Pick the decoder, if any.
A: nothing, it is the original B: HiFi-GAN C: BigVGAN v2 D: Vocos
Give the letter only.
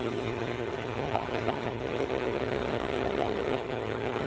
B